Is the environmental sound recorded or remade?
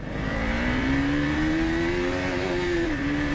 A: remade